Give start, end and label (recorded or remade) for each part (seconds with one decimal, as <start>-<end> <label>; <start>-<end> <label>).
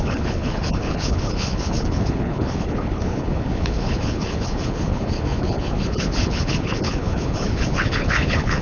0.0-8.6 remade